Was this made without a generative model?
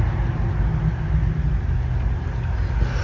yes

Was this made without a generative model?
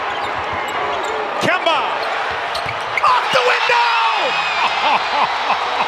yes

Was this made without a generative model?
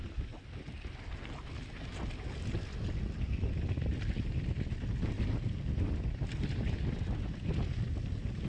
yes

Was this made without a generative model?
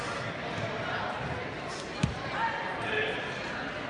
yes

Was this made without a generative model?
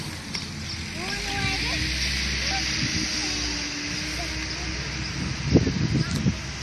yes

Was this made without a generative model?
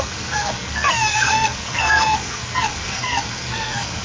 no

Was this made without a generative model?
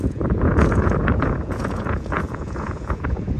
no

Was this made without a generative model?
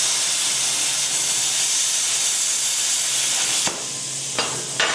yes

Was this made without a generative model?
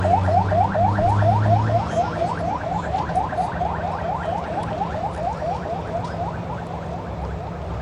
yes